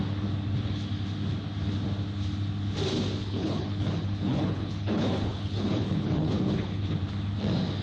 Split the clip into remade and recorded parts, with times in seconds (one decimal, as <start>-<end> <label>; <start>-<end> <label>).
0.0-3.2 recorded; 3.2-7.0 remade; 7.0-7.8 recorded